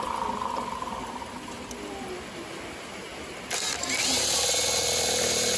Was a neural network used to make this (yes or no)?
no